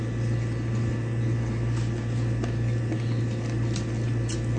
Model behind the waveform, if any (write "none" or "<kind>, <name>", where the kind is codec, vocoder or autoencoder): none